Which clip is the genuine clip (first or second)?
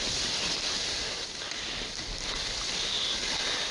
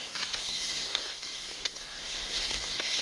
first